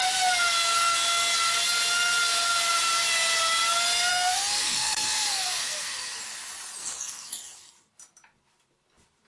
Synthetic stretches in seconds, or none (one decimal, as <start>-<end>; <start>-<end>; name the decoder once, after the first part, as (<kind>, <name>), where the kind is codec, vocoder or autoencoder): 4.1-6.2 (codec, SNAC); 6.8-7.7